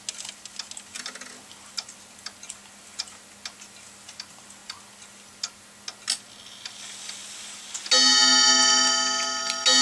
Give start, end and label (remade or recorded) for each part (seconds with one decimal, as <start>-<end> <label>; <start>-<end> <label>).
0.0-9.8 recorded